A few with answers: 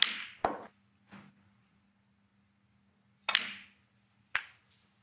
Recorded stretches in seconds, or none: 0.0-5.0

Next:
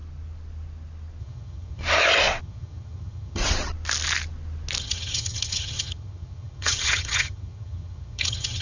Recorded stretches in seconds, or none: 0.0-1.2; 1.8-2.4; 3.4-4.8

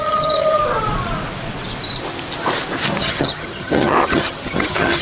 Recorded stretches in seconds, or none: 0.6-3.0

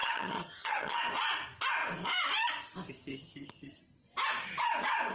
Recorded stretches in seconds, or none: 1.0-3.1; 3.8-5.1

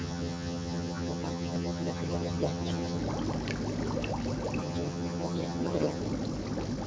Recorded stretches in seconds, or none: 3.0-4.6; 6.0-6.9

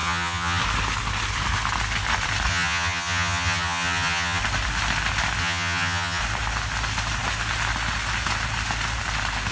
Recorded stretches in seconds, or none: 0.6-2.5; 4.4-5.4; 6.2-9.5

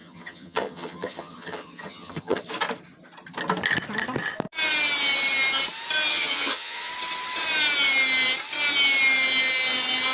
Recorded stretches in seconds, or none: 2.4-6.1; 6.9-10.1

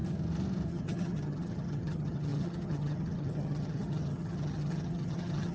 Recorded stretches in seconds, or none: 0.0-0.7